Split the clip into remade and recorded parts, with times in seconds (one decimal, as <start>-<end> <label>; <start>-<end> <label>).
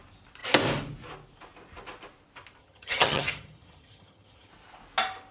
0.0-2.6 recorded; 2.6-4.5 remade; 4.5-5.3 recorded